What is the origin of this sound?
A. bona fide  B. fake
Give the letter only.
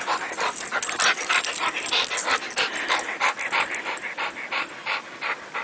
A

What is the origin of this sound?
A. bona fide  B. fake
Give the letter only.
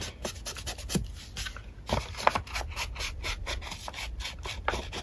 A